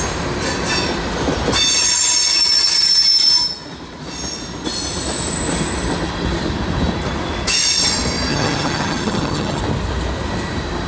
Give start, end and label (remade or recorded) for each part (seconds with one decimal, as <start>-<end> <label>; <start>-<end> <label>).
0.0-8.3 recorded; 8.3-9.6 remade; 9.6-10.9 recorded

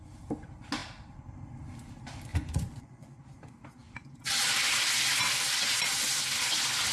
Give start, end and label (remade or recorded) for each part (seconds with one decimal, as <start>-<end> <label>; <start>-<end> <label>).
0.0-2.3 recorded; 2.3-3.2 remade; 3.2-6.9 recorded

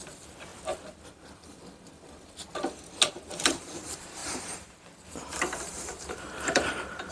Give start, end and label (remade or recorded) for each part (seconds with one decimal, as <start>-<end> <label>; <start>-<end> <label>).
0.0-0.5 remade; 0.5-3.1 recorded; 3.1-7.1 remade

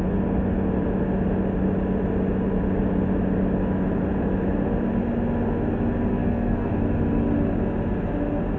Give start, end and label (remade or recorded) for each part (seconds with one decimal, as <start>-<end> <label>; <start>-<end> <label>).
0.0-6.1 recorded; 6.1-6.7 remade; 6.7-8.6 recorded